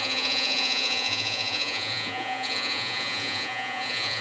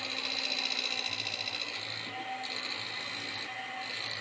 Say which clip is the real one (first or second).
second